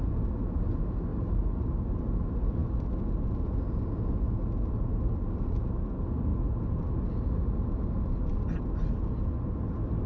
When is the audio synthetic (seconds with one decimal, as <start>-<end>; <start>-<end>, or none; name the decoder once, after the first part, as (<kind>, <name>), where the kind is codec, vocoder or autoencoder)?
none